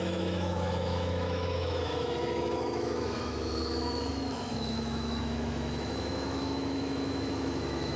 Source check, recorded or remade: remade